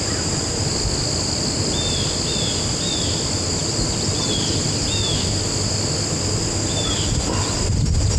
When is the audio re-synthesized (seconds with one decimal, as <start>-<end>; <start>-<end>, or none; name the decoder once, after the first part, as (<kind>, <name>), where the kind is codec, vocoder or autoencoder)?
none